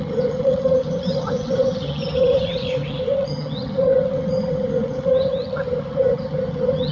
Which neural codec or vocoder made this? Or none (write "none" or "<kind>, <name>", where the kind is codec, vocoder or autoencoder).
vocoder, HiFi-GAN